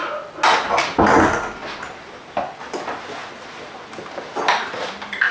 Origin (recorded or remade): recorded